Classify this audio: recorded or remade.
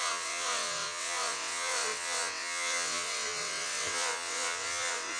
remade